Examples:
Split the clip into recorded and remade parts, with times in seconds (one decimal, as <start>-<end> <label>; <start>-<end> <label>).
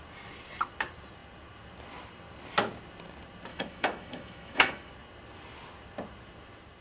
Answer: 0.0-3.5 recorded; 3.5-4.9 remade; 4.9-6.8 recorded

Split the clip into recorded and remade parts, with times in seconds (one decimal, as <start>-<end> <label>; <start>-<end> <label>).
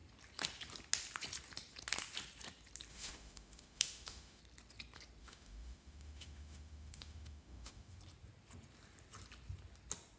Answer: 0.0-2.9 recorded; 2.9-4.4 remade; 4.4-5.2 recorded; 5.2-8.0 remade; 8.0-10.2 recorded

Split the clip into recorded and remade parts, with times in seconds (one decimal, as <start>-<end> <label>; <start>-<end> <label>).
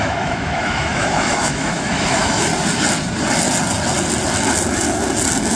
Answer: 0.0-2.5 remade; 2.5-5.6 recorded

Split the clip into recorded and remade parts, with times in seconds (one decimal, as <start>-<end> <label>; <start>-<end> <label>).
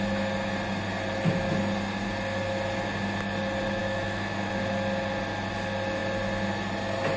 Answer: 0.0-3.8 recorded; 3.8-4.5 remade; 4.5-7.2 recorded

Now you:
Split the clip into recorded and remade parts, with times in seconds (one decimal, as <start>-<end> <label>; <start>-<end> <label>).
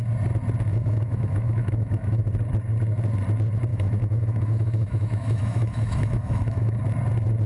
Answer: 0.0-0.7 recorded; 0.7-2.2 remade; 2.2-3.7 recorded; 3.7-6.8 remade; 6.8-7.5 recorded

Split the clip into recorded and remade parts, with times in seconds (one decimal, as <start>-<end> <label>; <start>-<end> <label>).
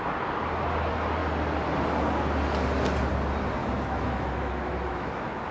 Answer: 0.0-3.6 recorded; 3.6-5.5 remade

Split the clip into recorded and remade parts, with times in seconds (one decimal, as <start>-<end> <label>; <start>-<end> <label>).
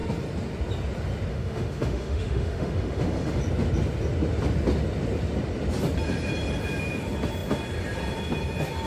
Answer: 0.0-1.3 recorded; 1.3-3.4 remade; 3.4-8.9 recorded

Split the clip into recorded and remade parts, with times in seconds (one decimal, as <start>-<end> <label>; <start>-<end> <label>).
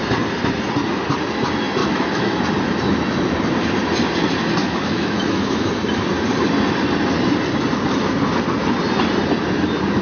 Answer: 0.0-1.8 recorded; 1.8-2.4 remade; 2.4-4.6 recorded; 4.6-5.7 remade; 5.7-10.0 recorded